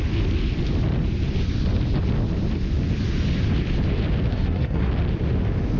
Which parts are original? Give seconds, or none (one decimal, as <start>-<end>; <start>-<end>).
0.0-4.3; 4.9-5.8